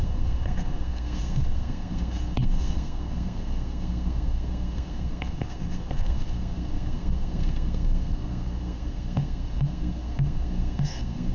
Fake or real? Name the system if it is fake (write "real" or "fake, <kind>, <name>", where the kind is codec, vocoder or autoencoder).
fake, codec, SNAC